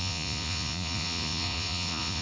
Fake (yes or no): yes